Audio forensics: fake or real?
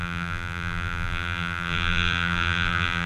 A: fake